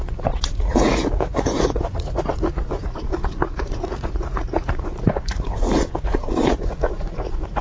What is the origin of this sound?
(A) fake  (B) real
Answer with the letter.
A